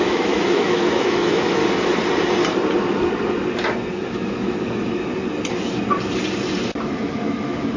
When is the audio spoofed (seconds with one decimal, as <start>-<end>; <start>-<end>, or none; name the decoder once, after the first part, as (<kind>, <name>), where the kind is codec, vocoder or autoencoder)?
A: 0.0-1.6 (autoencoder, DAC-VAE); 3.9-5.1; 6.8-7.8